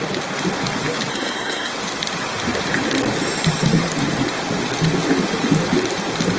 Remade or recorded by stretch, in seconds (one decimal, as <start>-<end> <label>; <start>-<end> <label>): 0.0-1.1 recorded; 1.1-1.7 remade; 1.7-6.4 recorded